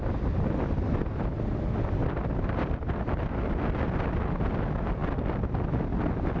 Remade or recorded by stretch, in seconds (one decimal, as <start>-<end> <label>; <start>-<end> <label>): 0.0-6.4 recorded